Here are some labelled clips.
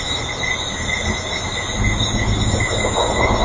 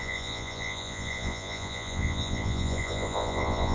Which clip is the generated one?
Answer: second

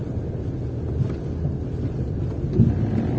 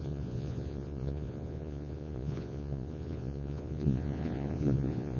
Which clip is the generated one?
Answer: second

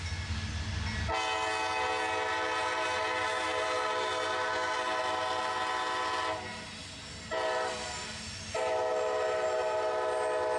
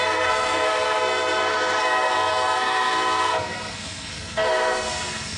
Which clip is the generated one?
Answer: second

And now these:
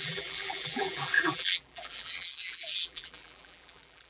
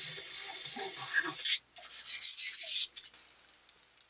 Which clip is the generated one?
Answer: first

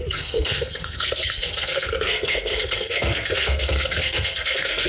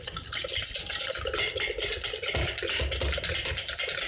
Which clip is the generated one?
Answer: first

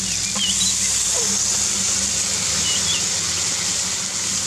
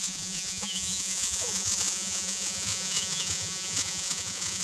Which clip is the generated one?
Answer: second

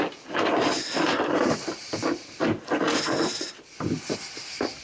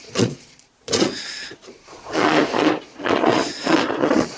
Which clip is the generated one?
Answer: second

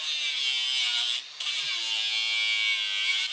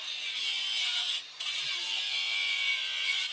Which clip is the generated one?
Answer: second